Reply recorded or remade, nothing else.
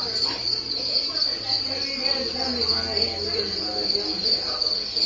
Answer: recorded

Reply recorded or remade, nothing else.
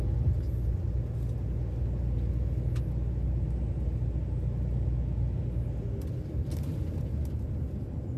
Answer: recorded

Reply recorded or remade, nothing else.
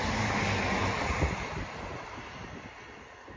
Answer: recorded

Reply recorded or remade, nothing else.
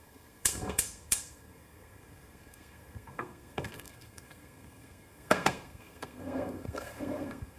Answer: remade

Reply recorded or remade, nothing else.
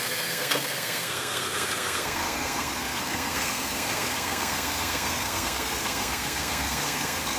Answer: remade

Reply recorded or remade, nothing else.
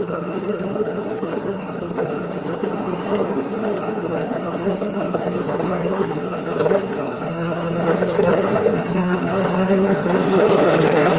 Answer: remade